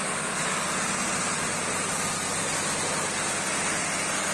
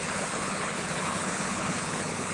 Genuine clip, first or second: first